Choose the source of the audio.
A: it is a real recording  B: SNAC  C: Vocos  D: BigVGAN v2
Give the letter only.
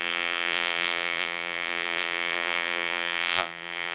D